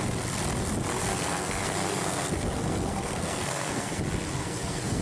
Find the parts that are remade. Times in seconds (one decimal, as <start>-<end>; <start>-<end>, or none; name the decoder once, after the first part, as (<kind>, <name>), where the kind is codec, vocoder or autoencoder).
1.1-4.0 (codec, SNAC); 4.4-5.0